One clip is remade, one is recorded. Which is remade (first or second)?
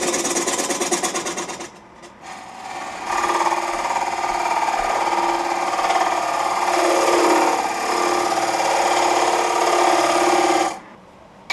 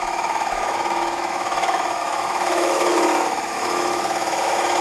second